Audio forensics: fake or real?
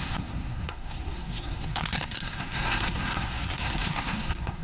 fake